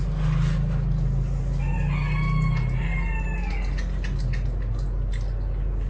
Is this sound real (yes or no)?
yes